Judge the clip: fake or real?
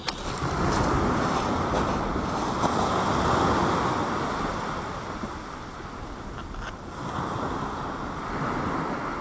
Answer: real